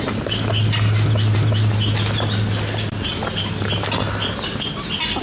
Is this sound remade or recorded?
recorded